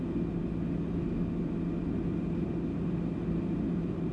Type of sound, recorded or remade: recorded